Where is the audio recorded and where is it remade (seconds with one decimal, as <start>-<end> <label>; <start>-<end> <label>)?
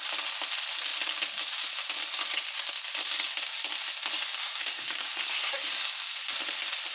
0.0-4.4 recorded; 4.4-5.7 remade; 5.7-6.9 recorded